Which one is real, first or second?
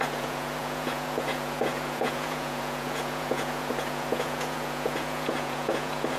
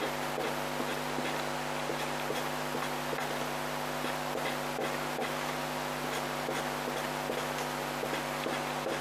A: second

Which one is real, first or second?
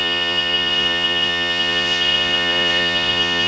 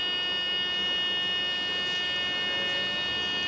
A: second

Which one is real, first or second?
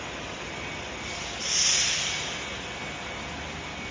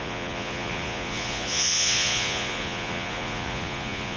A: first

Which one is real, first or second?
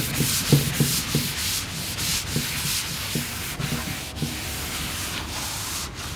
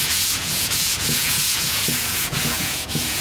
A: first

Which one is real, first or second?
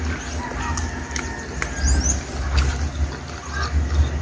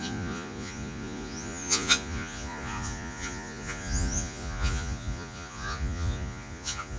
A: first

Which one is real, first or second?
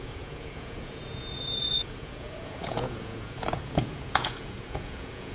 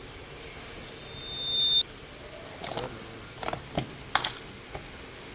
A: second